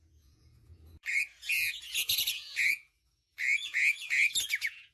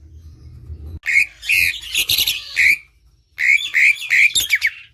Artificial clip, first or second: first